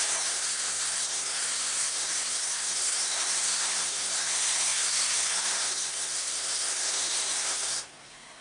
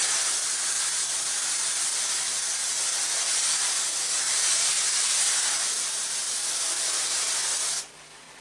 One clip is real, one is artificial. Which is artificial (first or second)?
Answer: first